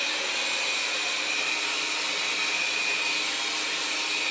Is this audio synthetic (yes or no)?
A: no